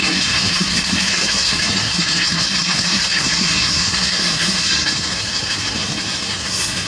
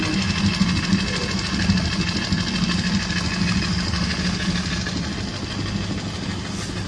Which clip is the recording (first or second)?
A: second